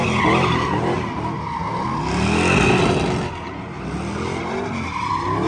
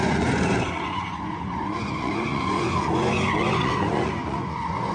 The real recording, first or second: first